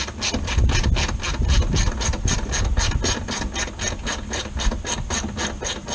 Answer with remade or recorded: recorded